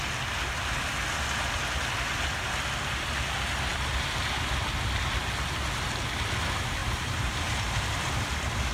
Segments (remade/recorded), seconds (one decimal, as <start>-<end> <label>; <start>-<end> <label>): 0.0-6.8 recorded; 6.8-7.5 remade; 7.5-8.7 recorded